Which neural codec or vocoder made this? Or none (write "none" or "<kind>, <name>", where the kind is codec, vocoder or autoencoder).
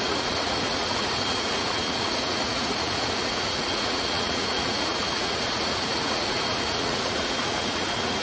vocoder, Vocos